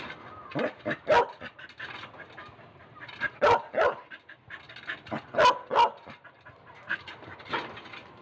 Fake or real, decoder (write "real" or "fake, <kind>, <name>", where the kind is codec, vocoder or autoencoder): real